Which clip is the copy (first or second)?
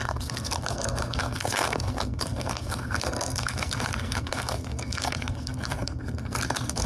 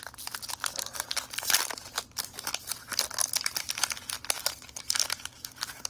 first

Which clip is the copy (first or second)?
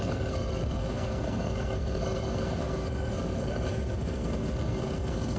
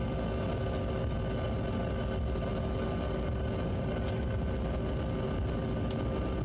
first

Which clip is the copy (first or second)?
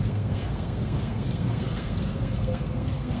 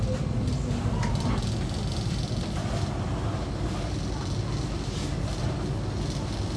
first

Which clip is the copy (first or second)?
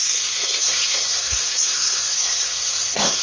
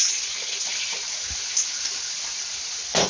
first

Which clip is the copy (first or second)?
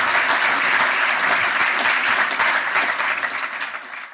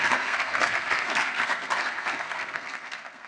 second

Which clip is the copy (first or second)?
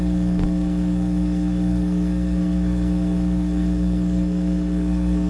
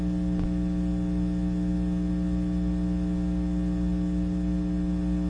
first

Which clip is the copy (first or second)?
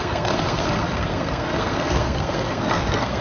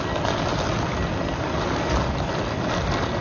first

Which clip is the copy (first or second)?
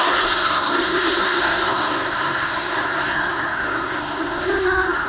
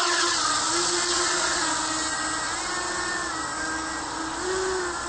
first